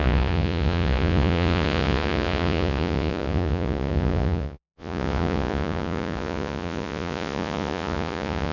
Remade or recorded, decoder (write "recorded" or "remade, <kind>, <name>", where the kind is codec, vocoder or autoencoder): remade, vocoder, Vocos